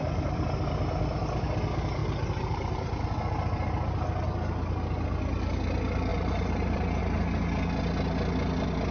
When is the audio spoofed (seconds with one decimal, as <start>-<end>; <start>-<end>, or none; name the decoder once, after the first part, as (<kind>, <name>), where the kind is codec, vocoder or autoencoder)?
2.0-3.0 (vocoder, BigVGAN v2); 6.1-7.0